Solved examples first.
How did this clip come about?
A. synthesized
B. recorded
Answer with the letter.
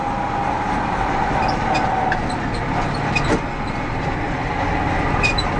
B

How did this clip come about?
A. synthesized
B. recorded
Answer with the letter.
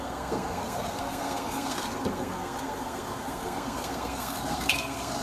A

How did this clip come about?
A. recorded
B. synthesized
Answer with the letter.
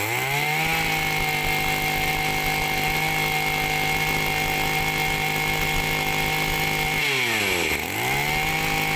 A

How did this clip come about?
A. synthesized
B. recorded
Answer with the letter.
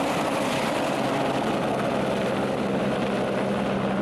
B